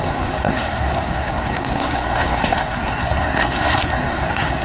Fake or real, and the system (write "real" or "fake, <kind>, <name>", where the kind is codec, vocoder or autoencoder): fake, codec, SNAC